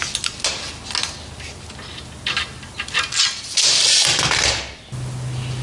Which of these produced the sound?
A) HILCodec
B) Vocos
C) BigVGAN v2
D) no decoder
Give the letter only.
D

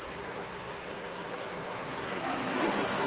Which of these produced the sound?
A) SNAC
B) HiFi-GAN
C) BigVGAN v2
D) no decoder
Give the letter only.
A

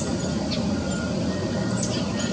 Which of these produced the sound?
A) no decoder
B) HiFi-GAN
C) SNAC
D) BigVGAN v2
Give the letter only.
A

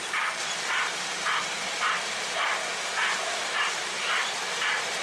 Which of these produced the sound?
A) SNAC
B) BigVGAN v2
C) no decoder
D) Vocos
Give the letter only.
B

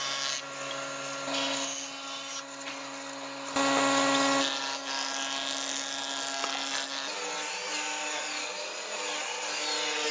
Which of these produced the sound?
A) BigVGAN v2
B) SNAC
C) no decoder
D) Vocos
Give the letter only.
C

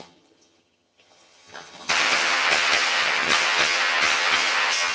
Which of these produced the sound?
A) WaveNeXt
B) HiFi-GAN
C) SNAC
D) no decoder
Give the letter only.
B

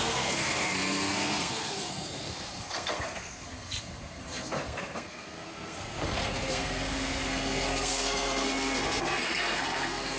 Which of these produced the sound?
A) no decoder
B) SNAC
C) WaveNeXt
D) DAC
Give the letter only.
B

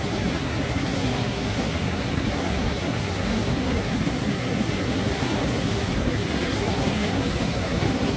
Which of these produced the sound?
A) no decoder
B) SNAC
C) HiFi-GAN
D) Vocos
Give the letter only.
B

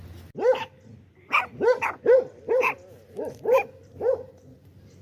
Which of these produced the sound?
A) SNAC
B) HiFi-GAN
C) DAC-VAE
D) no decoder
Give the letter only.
D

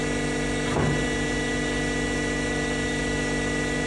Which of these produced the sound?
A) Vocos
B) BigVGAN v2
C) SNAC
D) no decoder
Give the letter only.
D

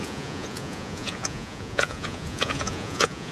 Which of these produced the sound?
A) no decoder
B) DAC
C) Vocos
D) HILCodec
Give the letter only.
C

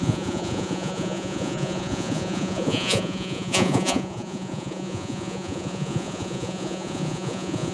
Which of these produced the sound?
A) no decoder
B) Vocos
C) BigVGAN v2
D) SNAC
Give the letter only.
B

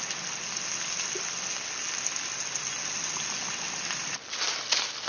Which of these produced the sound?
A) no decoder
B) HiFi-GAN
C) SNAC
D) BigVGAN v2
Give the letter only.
A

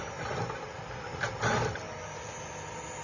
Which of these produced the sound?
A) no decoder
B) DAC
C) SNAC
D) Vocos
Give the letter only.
A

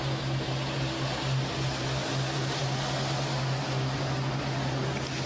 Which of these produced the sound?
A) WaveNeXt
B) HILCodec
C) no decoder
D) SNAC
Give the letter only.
C